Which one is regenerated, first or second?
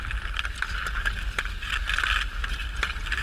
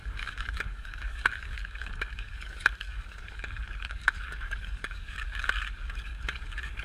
second